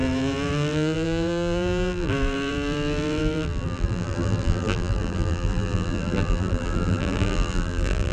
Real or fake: fake